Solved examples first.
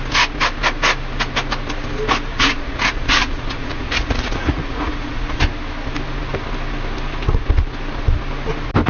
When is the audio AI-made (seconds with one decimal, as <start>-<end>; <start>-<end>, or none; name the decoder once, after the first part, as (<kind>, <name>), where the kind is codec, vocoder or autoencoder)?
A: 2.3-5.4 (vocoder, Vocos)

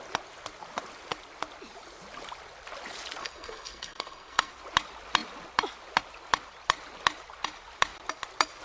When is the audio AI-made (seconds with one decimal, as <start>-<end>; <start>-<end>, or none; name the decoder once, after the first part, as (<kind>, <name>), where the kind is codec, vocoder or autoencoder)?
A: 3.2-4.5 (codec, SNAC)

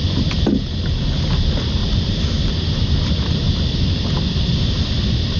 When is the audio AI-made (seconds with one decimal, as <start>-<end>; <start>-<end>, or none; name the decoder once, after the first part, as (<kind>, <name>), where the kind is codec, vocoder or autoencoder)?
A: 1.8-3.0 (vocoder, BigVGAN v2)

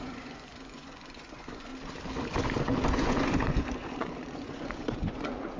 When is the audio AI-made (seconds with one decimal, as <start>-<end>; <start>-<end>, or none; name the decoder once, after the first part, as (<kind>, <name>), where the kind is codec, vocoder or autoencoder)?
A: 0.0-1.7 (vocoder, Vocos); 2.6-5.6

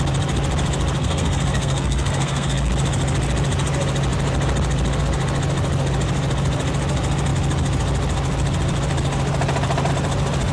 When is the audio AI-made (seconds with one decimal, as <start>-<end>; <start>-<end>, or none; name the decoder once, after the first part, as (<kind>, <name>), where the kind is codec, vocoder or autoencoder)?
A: 1.0-2.7 (codec, SNAC)